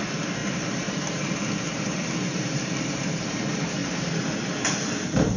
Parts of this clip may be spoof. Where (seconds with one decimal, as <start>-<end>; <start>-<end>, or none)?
0.4-3.3; 3.8-4.3